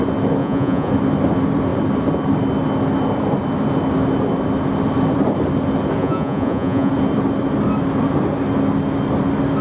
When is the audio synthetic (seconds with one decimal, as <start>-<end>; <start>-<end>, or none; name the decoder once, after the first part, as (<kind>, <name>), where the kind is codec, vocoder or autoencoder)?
0.4-0.9 (vocoder, Vocos); 6.0-6.9